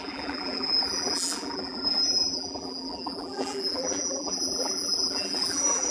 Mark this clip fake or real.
fake